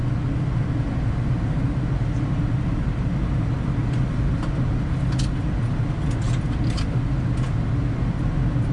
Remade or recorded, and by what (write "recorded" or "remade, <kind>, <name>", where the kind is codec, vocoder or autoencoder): recorded